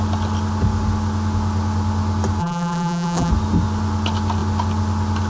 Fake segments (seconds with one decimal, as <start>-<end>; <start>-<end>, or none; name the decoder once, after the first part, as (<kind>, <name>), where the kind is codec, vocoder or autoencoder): 2.4-3.3 (vocoder, BigVGAN v2)